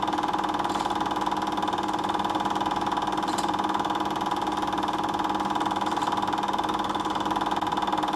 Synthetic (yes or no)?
no